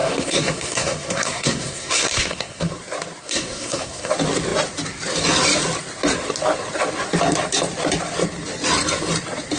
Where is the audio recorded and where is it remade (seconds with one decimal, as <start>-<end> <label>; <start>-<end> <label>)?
0.0-2.7 remade; 2.7-3.2 recorded; 3.2-4.1 remade; 4.1-9.6 recorded